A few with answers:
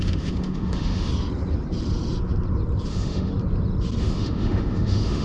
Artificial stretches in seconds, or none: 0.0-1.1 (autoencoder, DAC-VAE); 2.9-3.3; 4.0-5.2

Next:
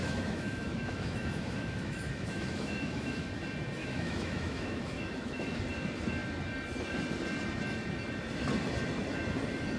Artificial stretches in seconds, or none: 0.0-3.3 (autoencoder, DAC-VAE); 3.8-5.6

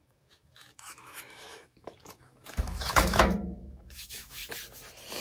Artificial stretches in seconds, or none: 0.0-4.4 (autoencoder, DAC-VAE)

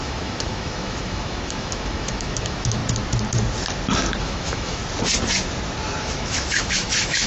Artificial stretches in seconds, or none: 0.0-2.8 (autoencoder, DAC-VAE); 4.2-4.8; 6.0-7.3

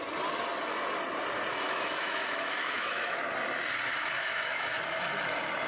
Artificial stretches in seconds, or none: 1.5-3.2 (autoencoder, DAC-VAE); 3.9-4.8

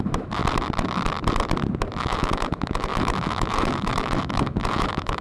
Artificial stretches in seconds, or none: 0.0-0.4 (autoencoder, DAC-VAE); 2.0-5.2